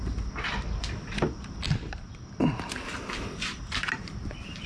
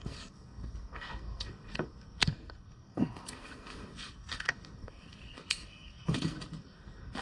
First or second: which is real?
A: first